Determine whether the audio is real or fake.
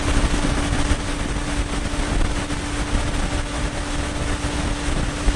real